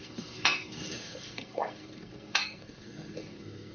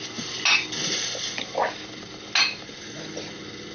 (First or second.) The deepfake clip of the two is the first